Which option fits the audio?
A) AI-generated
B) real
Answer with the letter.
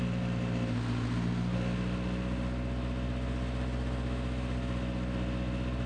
B